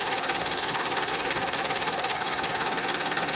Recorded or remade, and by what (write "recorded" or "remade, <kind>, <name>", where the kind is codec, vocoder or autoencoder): remade, codec, SNAC